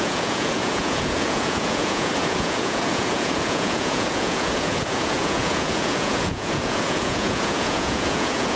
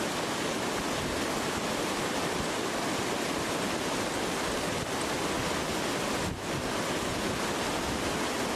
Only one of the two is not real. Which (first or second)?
first